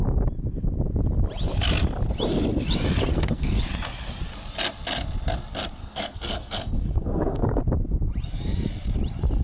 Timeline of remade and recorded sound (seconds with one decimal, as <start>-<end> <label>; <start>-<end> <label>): 0.0-3.1 recorded; 3.1-3.6 remade; 3.6-5.8 recorded; 5.8-7.6 remade; 7.6-9.4 recorded

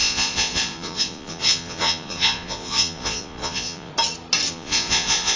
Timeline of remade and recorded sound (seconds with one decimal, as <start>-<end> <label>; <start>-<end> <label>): 0.0-3.9 remade; 3.9-4.5 recorded; 4.5-5.4 remade

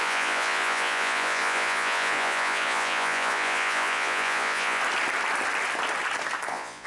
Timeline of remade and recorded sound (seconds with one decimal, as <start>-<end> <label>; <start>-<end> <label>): 0.0-4.8 remade; 4.8-6.5 recorded; 6.5-6.9 remade